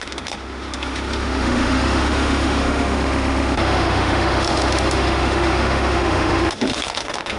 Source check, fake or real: fake